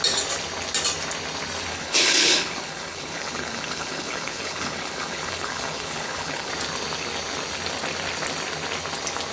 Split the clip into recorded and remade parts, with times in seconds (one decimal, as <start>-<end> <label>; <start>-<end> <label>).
0.0-1.7 recorded; 1.7-6.5 remade; 6.5-9.3 recorded